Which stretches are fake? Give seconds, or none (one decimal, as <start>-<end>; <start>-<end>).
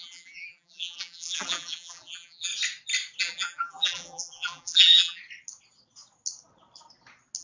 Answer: 0.0-2.5; 3.2-5.2